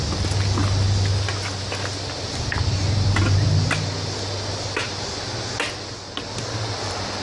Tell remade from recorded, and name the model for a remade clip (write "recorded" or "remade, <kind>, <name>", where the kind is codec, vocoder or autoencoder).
recorded